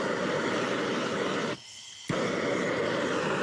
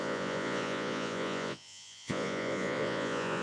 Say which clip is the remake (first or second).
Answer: second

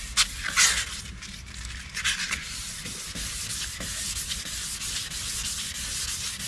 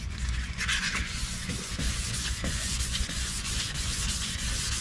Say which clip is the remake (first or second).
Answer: second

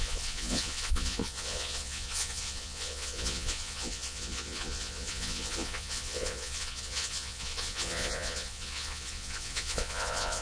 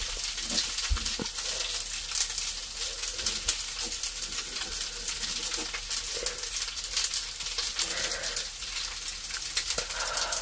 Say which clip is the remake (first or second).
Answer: first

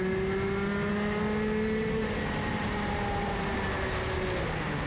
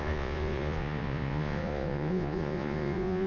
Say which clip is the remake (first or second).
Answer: second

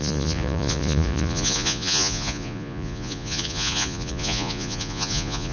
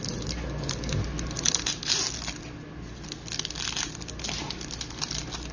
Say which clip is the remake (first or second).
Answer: first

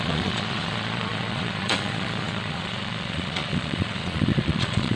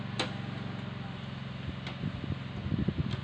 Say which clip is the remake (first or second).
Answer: first